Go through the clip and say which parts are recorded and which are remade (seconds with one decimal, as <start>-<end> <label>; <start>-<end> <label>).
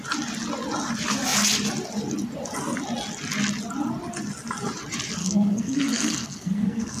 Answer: 0.0-5.2 recorded; 5.2-7.0 remade